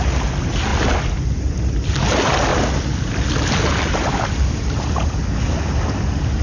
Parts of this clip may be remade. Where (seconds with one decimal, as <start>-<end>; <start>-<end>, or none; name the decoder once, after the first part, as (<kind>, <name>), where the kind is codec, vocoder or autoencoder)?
none